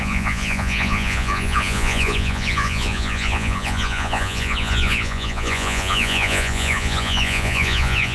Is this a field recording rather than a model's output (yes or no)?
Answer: no